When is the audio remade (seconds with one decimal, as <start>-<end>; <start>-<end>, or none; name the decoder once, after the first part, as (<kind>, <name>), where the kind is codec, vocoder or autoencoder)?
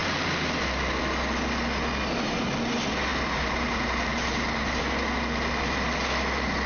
3.1-4.8 (vocoder, BigVGAN v2)